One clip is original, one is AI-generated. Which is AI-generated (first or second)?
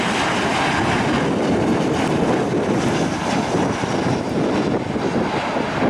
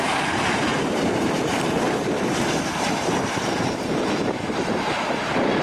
second